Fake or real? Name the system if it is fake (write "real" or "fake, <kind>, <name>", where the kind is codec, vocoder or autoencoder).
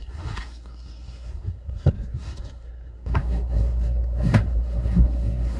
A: fake, codec, SNAC